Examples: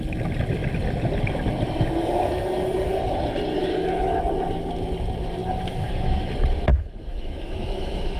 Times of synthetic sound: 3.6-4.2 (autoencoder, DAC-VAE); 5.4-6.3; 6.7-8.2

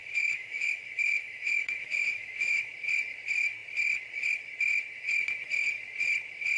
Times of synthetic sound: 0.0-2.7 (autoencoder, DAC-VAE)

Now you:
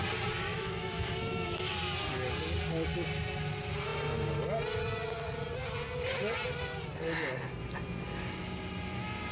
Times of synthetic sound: 0.5-1.1 (autoencoder, DAC-VAE)

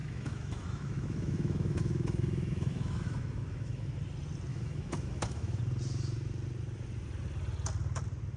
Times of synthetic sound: 0.0-3.9 (autoencoder, DAC-VAE); 4.5-5.6

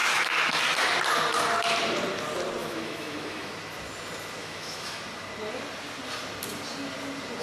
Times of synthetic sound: 0.0-0.6 (autoencoder, DAC-VAE); 2.6-3.5; 4.4-5.0

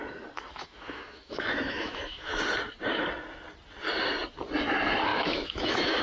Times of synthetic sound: 0.5-2.4 (autoencoder, DAC-VAE); 5.1-6.0

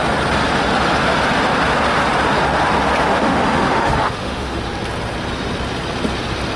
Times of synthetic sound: 3.1-4.6 (autoencoder, DAC-VAE)

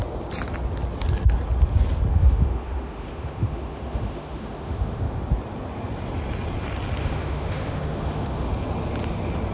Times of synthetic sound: 2.1-5.2 (autoencoder, DAC-VAE); 7.0-8.5